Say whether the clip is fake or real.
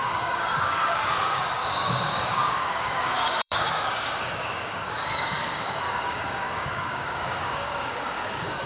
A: fake